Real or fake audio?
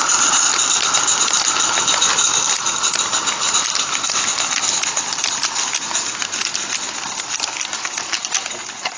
real